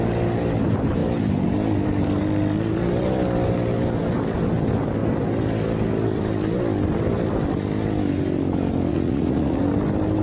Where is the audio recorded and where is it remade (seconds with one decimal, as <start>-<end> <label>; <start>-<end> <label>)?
0.0-8.9 recorded; 8.9-9.6 remade; 9.6-10.2 recorded